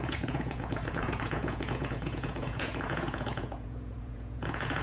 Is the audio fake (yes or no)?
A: yes